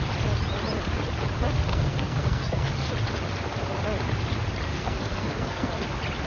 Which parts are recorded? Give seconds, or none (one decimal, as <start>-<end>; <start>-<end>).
0.0-1.7; 2.9-4.7; 5.7-6.3